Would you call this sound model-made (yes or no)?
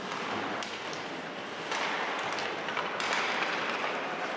yes